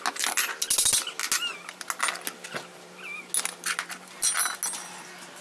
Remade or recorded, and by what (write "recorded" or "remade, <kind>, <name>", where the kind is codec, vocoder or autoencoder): recorded